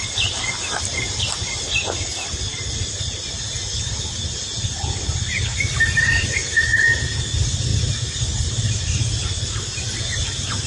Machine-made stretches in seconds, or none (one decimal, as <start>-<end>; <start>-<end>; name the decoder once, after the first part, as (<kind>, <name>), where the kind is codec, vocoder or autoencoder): 2.5-3.2 (vocoder, BigVGAN v2)